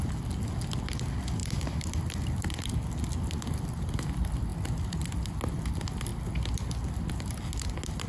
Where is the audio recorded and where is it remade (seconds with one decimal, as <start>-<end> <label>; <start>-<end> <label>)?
0.0-8.1 recorded